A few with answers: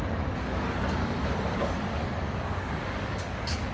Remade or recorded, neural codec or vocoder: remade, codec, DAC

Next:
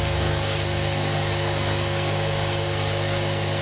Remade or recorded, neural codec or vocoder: remade, codec, SNAC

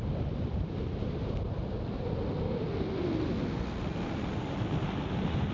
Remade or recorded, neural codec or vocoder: recorded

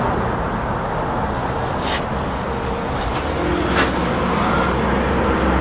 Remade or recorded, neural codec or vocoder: recorded